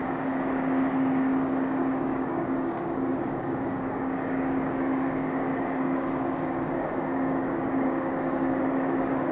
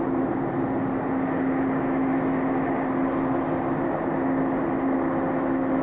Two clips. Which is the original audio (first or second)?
second